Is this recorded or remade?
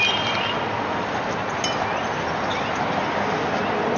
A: recorded